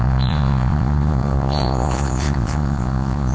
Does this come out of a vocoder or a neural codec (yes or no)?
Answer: yes